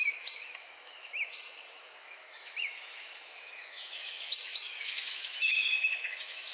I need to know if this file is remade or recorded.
remade